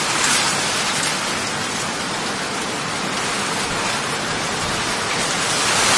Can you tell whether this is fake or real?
real